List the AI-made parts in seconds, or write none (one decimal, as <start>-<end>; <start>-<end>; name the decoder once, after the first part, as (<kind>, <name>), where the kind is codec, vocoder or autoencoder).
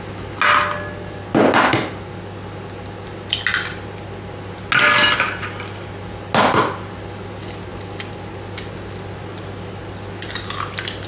none